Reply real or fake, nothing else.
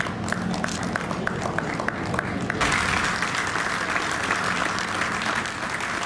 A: real